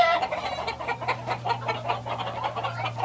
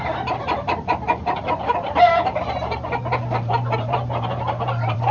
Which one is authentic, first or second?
first